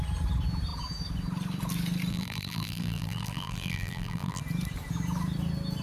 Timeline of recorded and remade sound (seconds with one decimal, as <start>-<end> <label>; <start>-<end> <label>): 0.0-2.1 recorded; 2.1-4.4 remade; 4.4-5.8 recorded

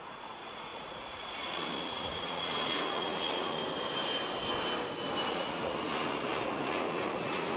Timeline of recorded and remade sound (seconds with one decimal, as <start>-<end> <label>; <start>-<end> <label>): 0.0-3.6 remade; 3.6-5.3 recorded; 5.3-7.6 remade

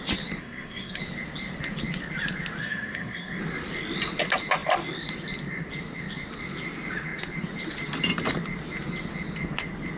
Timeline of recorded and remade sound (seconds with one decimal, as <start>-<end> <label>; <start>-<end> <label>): 0.0-0.4 recorded; 0.4-1.0 remade; 1.0-2.6 recorded; 2.6-3.4 remade; 3.4-10.0 recorded

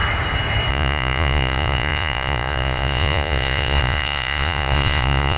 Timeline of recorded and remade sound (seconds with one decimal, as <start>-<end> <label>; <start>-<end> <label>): 0.0-0.7 recorded; 0.7-5.4 remade

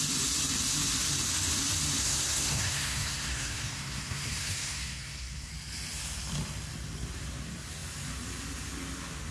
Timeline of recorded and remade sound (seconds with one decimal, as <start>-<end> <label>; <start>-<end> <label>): 0.0-2.0 recorded; 2.0-5.5 remade; 5.5-9.3 recorded

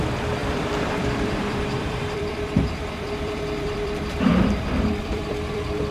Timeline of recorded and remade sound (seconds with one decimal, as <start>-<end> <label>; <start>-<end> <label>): 0.0-4.3 remade; 4.3-5.0 recorded; 5.0-5.9 remade

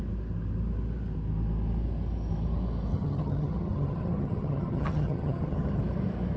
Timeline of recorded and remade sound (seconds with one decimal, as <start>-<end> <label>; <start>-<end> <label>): 0.0-2.9 recorded; 2.9-5.8 remade; 5.8-6.4 recorded

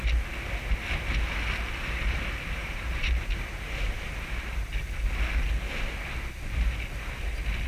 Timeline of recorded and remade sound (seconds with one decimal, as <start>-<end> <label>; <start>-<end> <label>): 0.0-2.6 recorded; 2.6-4.8 remade; 4.8-7.7 recorded